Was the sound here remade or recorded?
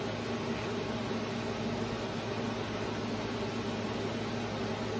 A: recorded